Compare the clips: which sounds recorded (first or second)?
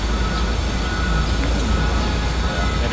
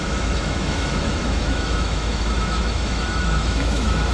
first